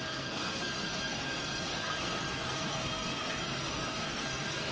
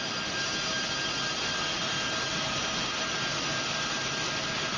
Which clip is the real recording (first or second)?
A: second